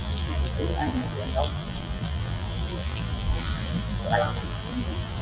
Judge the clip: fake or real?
fake